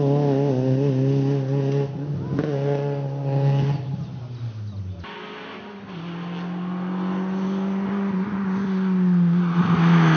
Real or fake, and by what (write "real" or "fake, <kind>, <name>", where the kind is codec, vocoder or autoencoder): real